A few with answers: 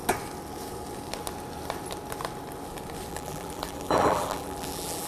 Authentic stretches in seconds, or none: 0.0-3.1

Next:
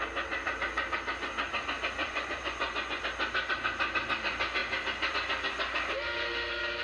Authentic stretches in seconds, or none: 0.0-2.0; 3.0-6.8

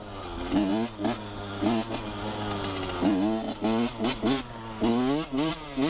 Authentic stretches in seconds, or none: 0.0-5.9

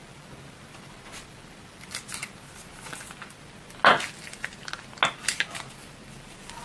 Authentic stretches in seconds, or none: 2.2-6.6

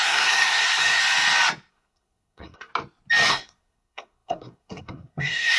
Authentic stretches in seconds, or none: 1.0-1.7; 2.7-3.3

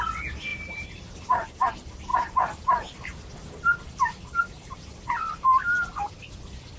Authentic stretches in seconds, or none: 0.0-0.5; 1.7-6.8

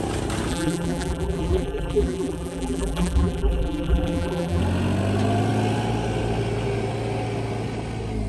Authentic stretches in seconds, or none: 0.0-0.5; 4.6-8.3